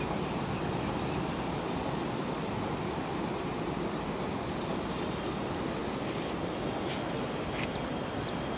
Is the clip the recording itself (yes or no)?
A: yes